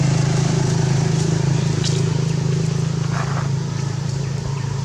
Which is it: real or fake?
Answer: real